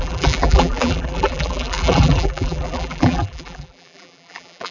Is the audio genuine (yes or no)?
no